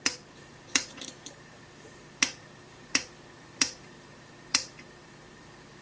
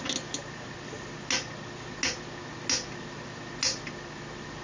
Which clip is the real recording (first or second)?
second